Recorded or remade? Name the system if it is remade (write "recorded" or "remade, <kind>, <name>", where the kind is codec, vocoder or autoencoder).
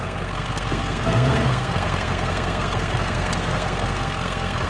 remade, codec, SNAC